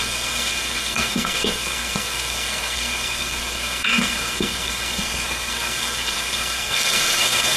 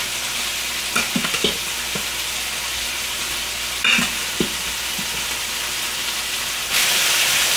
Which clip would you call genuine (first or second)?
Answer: second